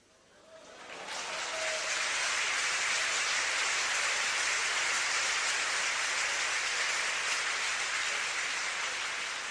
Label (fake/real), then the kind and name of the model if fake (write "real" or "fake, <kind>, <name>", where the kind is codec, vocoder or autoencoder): real